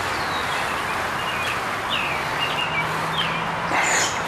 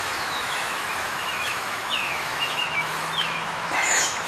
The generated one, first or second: second